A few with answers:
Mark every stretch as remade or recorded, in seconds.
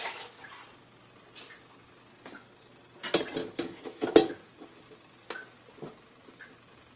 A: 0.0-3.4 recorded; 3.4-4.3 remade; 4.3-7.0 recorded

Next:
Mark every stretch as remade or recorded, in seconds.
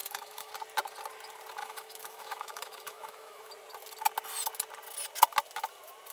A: 0.0-0.5 remade; 0.5-1.6 recorded; 1.6-3.5 remade; 3.5-6.1 recorded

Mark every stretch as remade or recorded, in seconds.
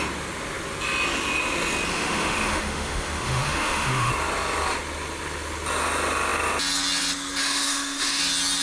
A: 0.0-1.9 recorded; 1.9-4.1 remade; 4.1-7.4 recorded; 7.4-8.2 remade; 8.2-8.6 recorded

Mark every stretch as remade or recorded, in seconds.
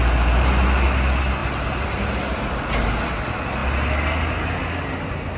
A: 0.0-5.4 recorded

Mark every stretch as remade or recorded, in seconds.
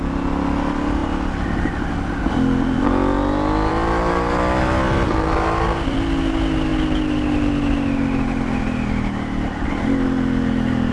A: 0.0-10.9 recorded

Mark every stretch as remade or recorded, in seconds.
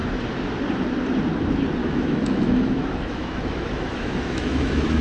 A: 0.0-1.8 recorded; 1.8-5.0 remade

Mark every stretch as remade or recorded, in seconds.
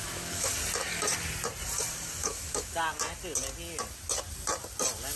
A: 0.0-0.5 remade; 0.5-2.2 recorded; 2.2-2.8 remade; 2.8-5.2 recorded